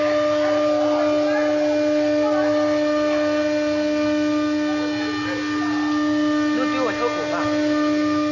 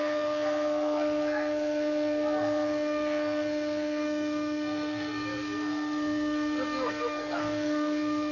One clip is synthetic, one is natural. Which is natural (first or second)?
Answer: first